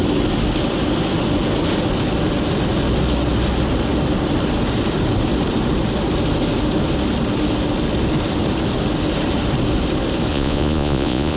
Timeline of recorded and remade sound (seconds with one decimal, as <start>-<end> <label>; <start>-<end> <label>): 0.0-10.3 recorded; 10.3-11.4 remade